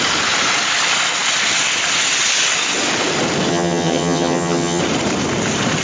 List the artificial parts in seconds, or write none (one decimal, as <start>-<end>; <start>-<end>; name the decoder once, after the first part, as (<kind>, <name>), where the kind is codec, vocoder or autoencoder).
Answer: 3.5-4.8 (vocoder, HiFi-GAN)